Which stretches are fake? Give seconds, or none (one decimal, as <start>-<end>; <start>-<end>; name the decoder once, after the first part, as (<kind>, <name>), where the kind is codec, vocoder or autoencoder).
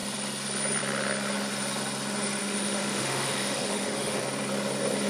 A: 2.4-4.2 (autoencoder, DAC-VAE)